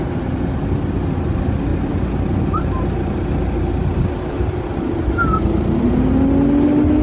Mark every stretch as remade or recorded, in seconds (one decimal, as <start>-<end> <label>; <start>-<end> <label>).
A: 0.0-1.7 recorded; 1.7-5.9 remade; 5.9-7.0 recorded